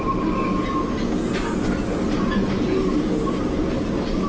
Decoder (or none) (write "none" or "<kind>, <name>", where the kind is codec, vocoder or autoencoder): none